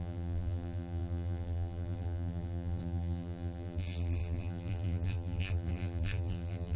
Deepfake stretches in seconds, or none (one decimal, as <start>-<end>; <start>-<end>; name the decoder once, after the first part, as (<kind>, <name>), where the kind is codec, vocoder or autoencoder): 0.0-6.8 (vocoder, BigVGAN v2)